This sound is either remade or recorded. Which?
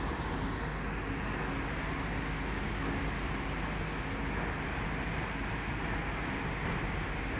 recorded